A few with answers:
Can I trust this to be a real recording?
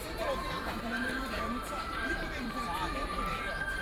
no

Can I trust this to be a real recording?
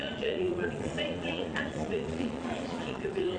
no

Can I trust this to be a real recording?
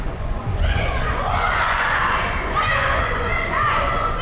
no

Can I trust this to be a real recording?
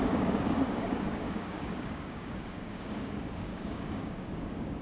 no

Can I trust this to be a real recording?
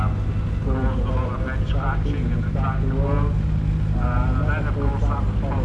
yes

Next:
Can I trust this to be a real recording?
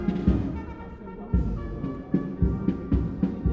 yes